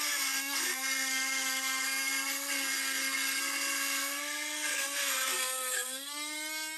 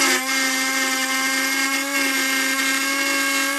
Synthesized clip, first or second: first